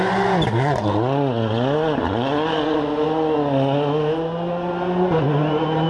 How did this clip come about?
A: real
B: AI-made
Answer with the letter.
A